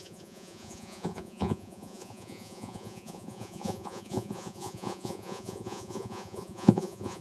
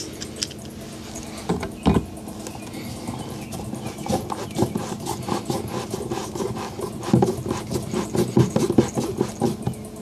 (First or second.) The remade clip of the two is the first